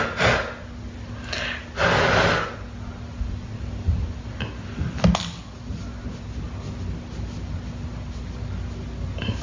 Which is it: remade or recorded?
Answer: recorded